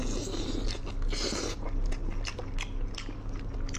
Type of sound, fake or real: real